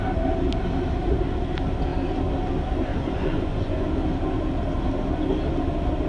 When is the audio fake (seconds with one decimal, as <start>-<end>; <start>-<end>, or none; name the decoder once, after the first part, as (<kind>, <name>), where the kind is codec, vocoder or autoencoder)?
2.9-3.9 (vocoder, Vocos)